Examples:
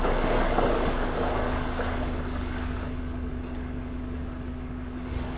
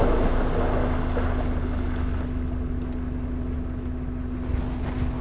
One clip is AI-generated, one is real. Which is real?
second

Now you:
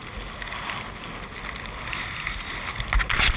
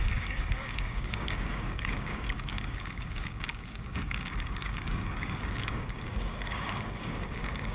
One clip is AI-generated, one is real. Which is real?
first